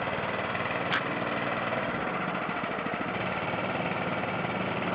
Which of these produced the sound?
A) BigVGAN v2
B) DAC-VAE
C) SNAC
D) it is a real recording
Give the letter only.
D